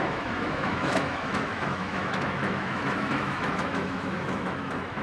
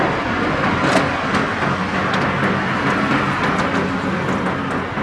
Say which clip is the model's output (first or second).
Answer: first